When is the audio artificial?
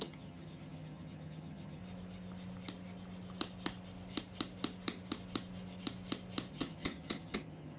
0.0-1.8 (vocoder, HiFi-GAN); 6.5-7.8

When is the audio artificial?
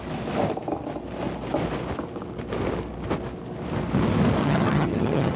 4.4-5.4 (vocoder, HiFi-GAN)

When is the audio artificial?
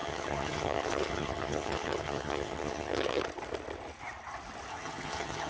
0.0-3.2 (vocoder, HiFi-GAN); 4.7-5.5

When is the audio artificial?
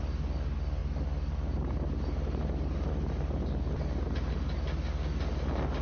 none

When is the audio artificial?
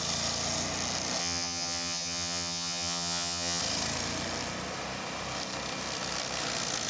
1.2-3.6 (vocoder, HiFi-GAN)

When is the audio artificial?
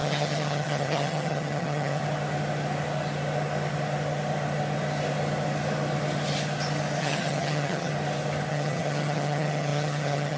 0.0-2.0 (vocoder, HiFi-GAN); 7.0-7.9; 8.5-10.4